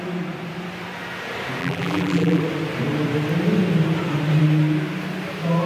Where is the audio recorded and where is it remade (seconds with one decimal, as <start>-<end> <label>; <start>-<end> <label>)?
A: 0.0-1.6 recorded; 1.6-2.4 remade; 2.4-5.7 recorded